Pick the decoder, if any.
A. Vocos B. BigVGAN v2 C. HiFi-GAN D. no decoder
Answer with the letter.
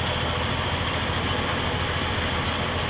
D